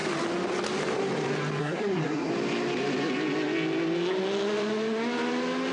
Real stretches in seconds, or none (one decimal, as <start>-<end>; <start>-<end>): 0.0-1.6; 2.3-5.7